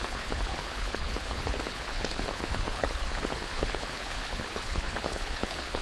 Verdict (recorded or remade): remade